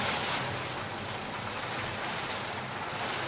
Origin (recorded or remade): recorded